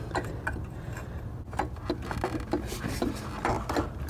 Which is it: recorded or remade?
recorded